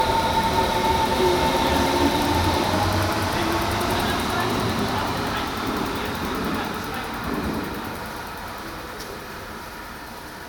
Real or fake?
fake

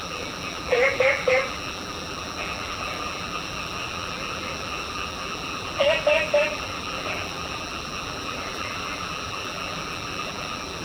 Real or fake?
fake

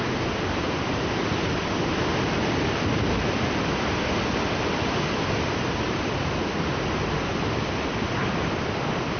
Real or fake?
fake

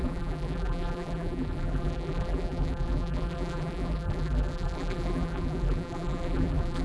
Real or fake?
fake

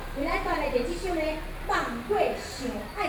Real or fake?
real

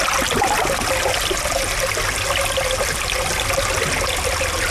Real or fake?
real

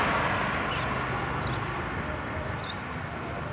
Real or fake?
real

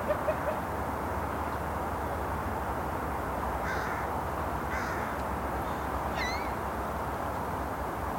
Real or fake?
real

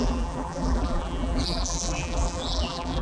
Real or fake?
fake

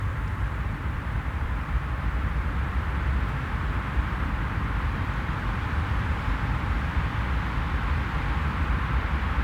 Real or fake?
fake